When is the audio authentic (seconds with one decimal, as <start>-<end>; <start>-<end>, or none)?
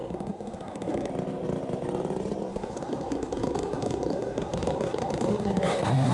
1.1-2.5